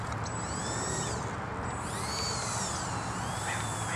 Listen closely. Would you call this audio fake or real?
fake